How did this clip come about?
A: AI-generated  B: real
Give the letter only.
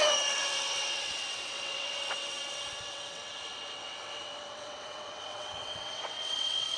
A